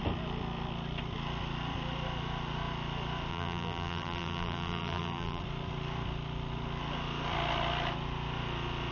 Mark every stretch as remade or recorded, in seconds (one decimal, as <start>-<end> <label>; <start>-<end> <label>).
0.0-3.3 recorded; 3.3-5.4 remade; 5.4-8.9 recorded